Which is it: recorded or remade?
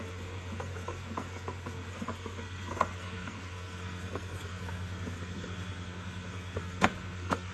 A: remade